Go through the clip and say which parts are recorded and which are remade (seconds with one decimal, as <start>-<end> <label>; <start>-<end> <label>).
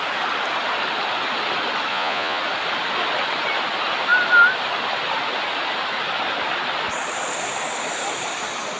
0.0-1.9 recorded; 1.9-2.4 remade; 2.4-8.8 recorded